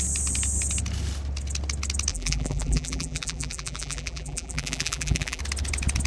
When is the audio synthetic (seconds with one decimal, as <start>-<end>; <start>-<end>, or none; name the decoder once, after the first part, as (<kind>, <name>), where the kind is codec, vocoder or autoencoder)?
2.1-5.4 (vocoder, BigVGAN v2)